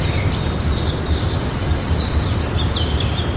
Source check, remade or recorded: recorded